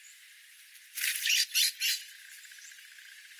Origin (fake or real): real